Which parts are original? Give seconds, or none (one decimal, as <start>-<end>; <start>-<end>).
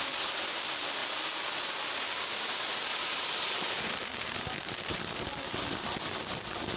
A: 0.0-2.9; 5.1-6.8